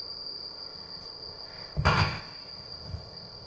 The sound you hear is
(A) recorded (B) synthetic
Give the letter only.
B